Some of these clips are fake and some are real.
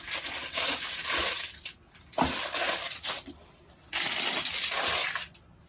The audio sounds real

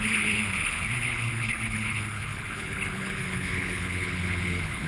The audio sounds fake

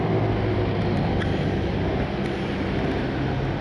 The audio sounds real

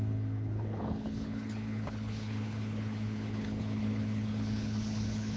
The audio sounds fake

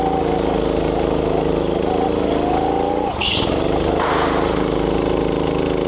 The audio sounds real